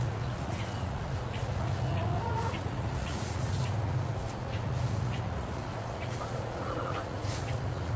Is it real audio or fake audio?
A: fake